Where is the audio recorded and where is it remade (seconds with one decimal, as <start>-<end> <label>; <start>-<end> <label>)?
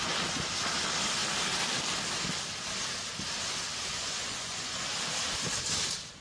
0.0-3.9 recorded; 3.9-4.9 remade; 4.9-6.2 recorded